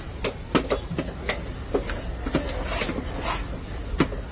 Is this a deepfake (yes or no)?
no